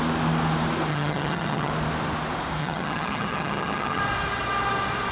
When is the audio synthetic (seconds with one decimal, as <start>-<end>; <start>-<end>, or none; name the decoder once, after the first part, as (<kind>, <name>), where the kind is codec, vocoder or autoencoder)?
0.9-1.7 (vocoder, HiFi-GAN); 2.6-4.0